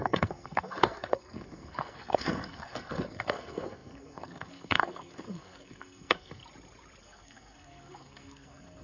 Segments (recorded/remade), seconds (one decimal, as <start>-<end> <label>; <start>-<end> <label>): 0.0-6.4 remade; 6.4-7.0 recorded; 7.0-8.8 remade